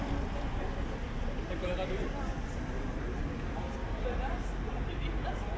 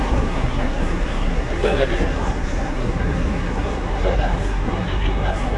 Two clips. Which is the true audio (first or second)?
first